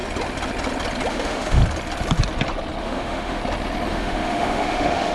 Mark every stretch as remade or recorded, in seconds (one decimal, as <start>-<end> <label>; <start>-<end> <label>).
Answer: 0.0-1.1 recorded; 1.1-1.6 remade; 1.6-2.8 recorded; 2.8-3.4 remade; 3.4-3.9 recorded; 3.9-5.1 remade